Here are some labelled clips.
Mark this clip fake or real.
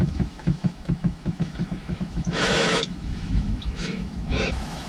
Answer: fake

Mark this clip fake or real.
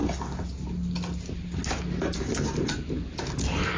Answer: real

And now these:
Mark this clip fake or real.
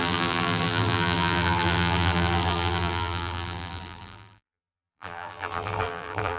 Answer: fake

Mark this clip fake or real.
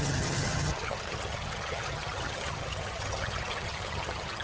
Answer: fake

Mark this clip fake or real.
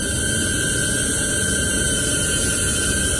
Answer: real